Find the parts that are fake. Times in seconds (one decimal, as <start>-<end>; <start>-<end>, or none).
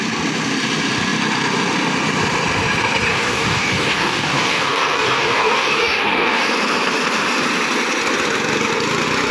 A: 3.1-6.5